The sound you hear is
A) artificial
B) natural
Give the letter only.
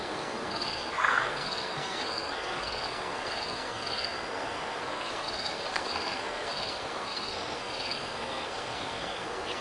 A